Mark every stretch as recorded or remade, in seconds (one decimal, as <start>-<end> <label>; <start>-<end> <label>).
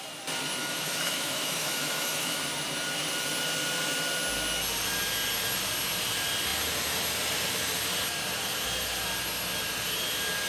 0.0-0.6 recorded; 0.6-2.4 remade; 2.4-10.5 recorded